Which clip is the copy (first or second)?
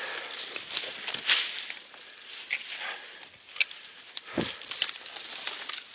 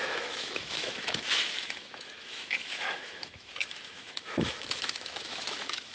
second